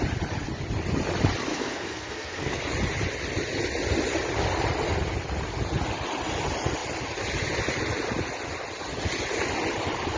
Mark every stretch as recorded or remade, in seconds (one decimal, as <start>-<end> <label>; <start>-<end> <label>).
0.0-1.5 recorded; 1.5-2.6 remade; 2.6-10.2 recorded